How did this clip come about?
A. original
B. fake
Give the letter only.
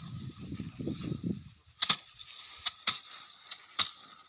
A